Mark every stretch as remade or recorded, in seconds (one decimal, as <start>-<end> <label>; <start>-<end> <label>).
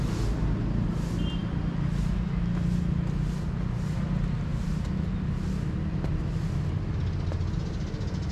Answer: 0.0-8.3 recorded